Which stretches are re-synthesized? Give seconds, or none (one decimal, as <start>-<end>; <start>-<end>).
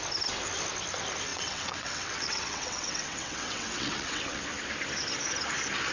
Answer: 1.3-4.4